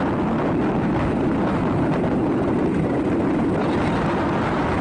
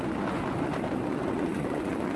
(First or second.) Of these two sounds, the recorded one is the first